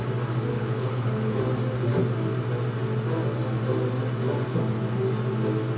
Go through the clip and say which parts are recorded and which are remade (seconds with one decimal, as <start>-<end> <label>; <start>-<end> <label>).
0.0-0.5 recorded; 0.5-1.4 remade; 1.4-5.8 recorded